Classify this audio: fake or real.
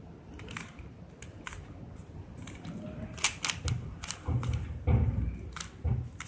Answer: real